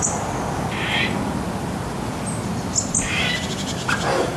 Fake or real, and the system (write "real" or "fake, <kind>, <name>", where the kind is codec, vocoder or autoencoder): real